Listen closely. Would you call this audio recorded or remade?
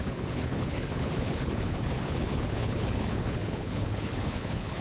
remade